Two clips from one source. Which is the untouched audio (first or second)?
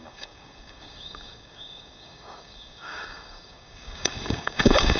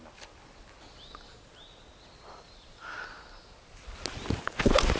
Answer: second